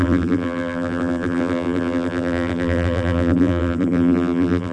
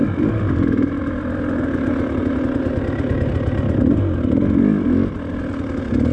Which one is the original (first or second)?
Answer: second